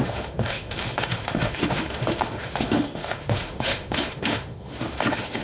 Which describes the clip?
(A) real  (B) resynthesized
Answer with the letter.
B